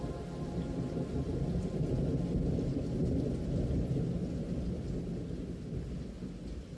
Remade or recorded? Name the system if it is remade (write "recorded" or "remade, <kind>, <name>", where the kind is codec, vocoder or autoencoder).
recorded